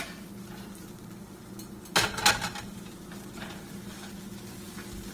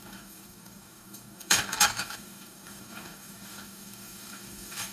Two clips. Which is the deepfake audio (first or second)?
second